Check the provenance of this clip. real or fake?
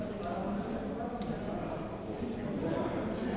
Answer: real